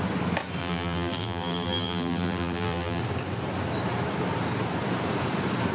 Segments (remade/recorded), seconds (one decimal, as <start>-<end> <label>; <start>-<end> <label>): 0.0-0.6 recorded; 0.6-3.0 remade; 3.0-5.7 recorded